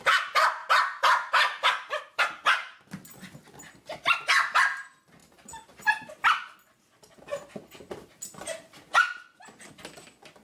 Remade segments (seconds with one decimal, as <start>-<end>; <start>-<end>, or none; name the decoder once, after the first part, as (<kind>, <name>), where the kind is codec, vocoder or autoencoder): 5.2-6.1 (vocoder, BigVGAN v2)